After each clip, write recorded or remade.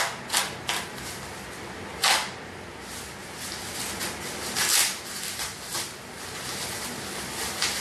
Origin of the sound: recorded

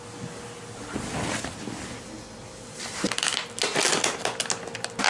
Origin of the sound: recorded